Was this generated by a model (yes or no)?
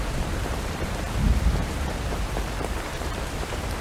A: yes